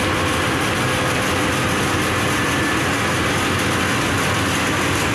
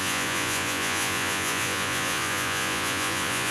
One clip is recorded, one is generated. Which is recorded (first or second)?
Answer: first